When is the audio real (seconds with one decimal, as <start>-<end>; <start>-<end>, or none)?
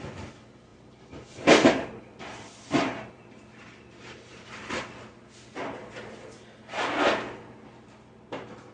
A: 0.0-0.7; 4.6-8.7